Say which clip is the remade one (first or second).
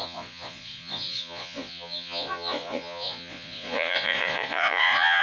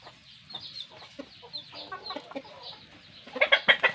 first